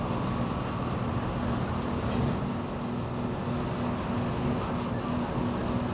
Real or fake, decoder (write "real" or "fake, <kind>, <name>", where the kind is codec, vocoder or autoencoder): real